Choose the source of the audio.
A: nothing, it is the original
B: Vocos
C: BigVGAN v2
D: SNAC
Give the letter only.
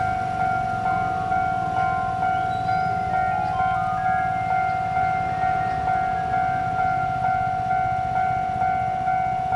A